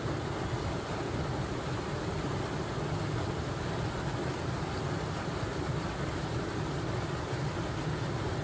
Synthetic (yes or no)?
no